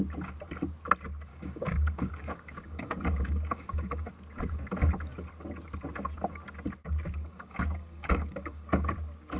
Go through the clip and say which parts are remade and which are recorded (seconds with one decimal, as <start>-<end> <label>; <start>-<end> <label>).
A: 0.0-1.3 recorded; 1.3-4.1 remade; 4.1-6.8 recorded; 6.8-8.9 remade; 8.9-9.4 recorded